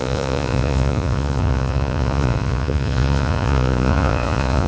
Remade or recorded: remade